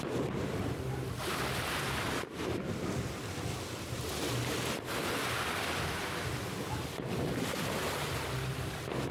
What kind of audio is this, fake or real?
real